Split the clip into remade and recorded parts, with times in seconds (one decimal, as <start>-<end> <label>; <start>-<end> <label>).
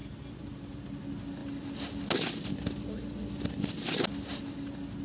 0.0-0.8 remade; 0.8-5.0 recorded